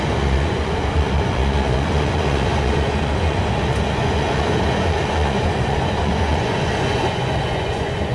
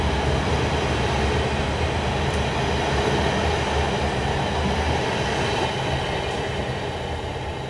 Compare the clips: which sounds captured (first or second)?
second